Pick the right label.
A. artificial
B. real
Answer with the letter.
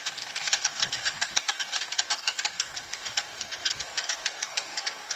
A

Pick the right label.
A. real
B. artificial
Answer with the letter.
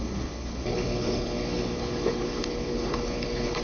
B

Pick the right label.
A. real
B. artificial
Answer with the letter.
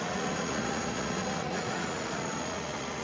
B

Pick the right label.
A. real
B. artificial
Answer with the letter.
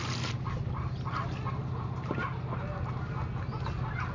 A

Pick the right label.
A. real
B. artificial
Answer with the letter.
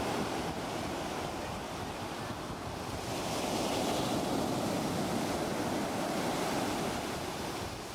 A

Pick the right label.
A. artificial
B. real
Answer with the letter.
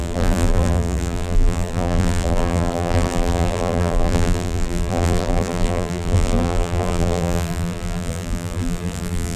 A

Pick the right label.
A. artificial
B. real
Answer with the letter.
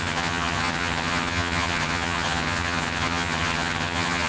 A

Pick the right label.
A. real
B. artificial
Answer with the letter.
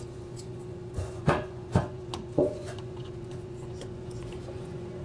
B